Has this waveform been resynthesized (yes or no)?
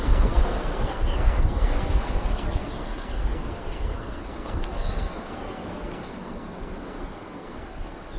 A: yes